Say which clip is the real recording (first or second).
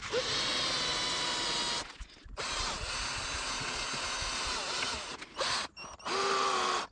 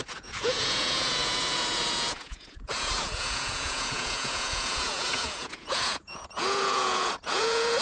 first